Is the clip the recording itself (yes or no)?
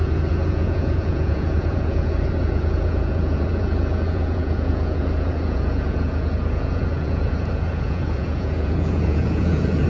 no